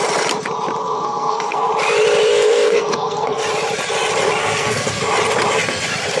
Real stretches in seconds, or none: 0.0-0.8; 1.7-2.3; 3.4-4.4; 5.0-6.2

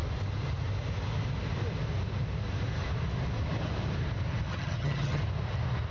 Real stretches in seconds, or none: 0.0-4.5; 5.2-5.9

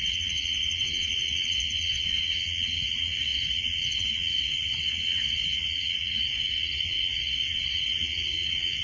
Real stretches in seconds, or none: none

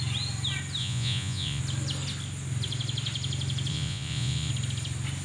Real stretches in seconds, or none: 0.0-0.8; 1.6-3.7; 4.5-5.2

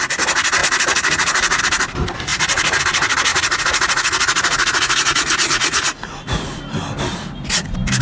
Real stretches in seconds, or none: 0.0-0.6; 1.6-2.3; 2.8-3.3; 6.6-8.0

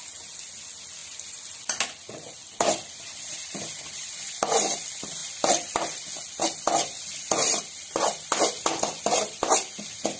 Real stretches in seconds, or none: 0.0-10.2

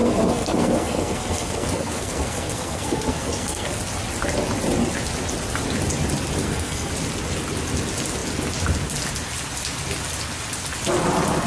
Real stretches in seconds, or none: 3.8-6.4; 6.9-11.5